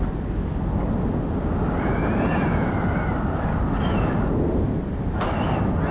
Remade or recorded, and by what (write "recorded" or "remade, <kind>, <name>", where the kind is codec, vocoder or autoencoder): recorded